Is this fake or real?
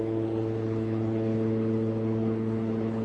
fake